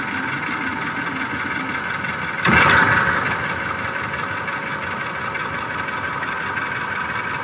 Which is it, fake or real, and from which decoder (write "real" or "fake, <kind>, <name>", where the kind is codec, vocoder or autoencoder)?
real